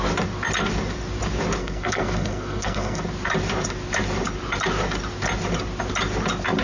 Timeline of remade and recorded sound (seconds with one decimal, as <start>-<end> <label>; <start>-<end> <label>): 0.0-1.6 recorded; 1.6-3.0 remade; 3.0-6.6 recorded